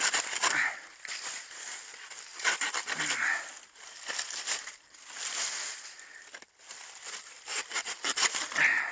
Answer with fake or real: real